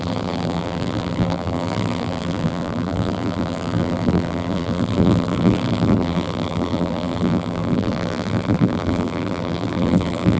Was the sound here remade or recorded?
remade